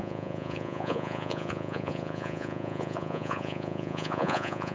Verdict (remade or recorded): remade